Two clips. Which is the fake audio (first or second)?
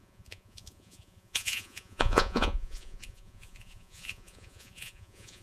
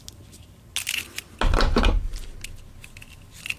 first